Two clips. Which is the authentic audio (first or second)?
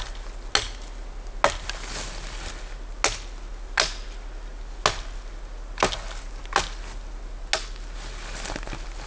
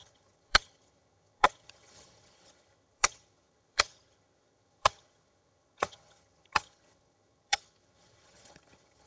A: first